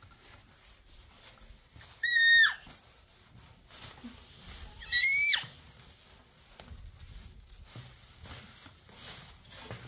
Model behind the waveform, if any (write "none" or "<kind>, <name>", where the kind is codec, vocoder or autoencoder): none